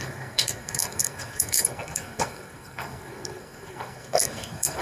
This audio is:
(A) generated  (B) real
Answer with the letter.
A